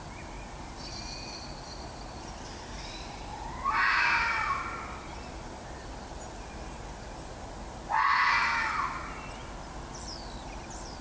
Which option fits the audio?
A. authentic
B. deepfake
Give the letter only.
A